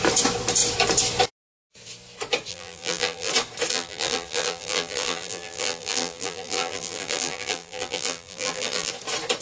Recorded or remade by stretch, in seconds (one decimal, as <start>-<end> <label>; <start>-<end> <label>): 0.0-2.5 recorded; 2.5-3.3 remade; 3.3-3.7 recorded; 3.7-8.9 remade; 8.9-9.4 recorded

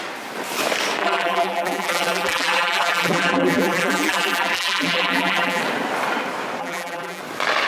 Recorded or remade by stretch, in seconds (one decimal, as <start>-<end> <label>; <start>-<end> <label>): 0.0-1.0 recorded; 1.0-5.6 remade; 5.6-6.6 recorded; 6.6-7.2 remade; 7.2-7.7 recorded

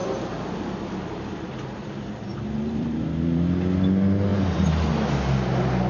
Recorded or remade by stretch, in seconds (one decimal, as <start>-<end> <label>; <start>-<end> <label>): 0.0-3.5 remade; 3.5-5.9 recorded

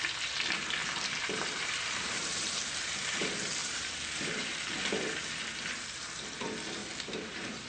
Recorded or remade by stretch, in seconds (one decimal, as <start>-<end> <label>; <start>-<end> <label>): 0.0-0.8 recorded; 0.8-3.2 remade; 3.2-3.6 recorded; 3.6-4.7 remade; 4.7-6.8 recorded; 6.8-7.7 remade

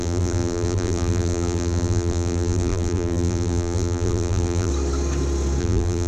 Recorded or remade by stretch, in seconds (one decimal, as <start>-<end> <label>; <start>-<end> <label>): 0.0-4.7 remade; 4.7-5.6 recorded; 5.6-6.1 remade

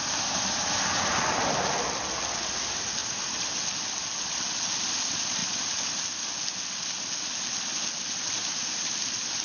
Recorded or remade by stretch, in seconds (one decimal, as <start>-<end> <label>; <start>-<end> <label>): 0.0-1.5 remade; 1.5-3.0 recorded; 3.0-3.6 remade; 3.6-5.4 recorded; 5.4-6.0 remade; 6.0-8.4 recorded; 8.4-9.0 remade; 9.0-9.4 recorded